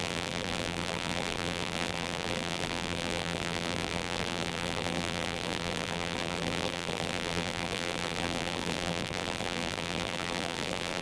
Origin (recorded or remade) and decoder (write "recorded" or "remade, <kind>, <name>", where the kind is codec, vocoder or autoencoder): remade, vocoder, BigVGAN v2